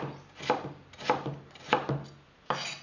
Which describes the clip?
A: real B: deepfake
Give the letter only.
A